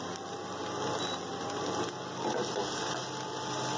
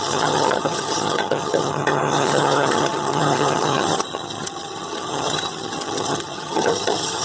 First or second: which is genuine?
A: first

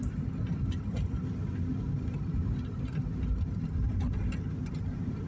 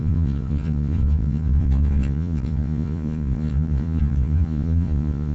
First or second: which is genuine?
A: first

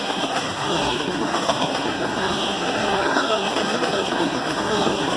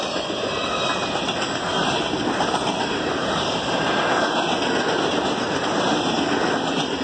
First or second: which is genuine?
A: second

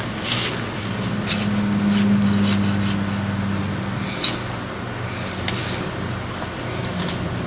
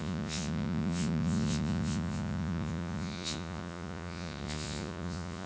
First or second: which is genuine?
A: first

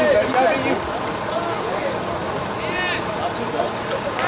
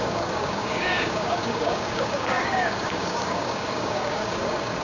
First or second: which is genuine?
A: first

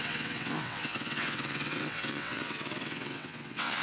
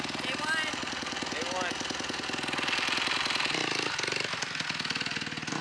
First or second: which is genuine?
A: second